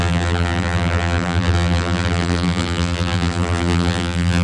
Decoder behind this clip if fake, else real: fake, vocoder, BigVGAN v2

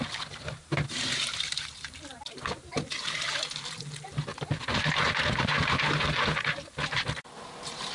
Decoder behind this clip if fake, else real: fake, vocoder, BigVGAN v2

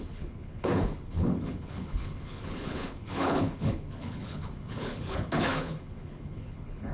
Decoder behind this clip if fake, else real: fake, codec, HILCodec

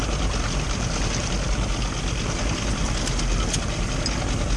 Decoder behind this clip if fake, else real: real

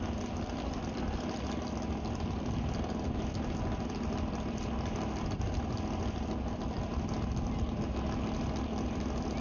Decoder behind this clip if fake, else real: real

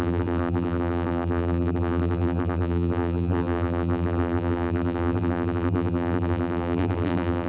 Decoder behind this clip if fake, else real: fake, vocoder, BigVGAN v2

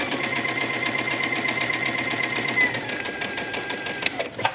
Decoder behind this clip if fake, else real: real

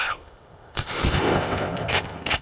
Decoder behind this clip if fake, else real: fake, codec, ZipCodec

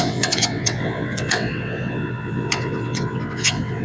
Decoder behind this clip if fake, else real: fake, vocoder, WaveNeXt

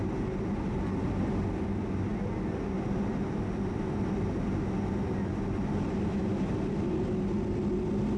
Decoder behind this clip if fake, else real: real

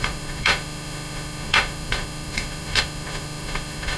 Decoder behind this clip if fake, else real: fake, autoencoder, DAC-VAE